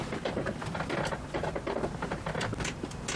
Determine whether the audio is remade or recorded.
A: recorded